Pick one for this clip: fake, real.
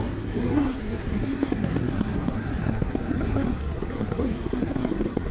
fake